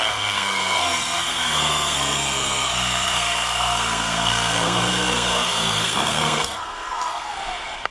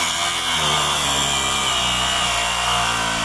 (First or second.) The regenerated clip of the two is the first